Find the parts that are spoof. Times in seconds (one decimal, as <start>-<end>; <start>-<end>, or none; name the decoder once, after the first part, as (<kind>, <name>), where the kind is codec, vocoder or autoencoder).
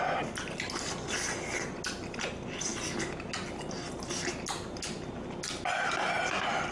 none